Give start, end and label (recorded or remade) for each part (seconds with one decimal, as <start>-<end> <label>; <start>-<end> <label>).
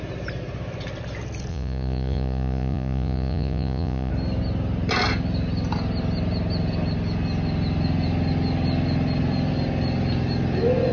0.0-1.5 recorded; 1.5-4.1 remade; 4.1-10.9 recorded